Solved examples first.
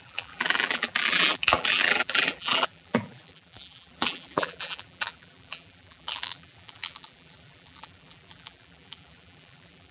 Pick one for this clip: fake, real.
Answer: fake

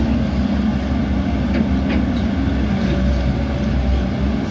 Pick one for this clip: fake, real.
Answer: real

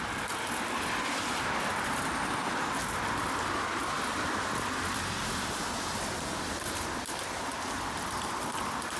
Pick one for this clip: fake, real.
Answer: fake